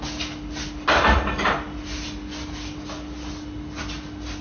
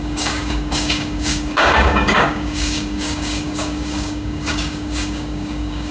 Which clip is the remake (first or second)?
second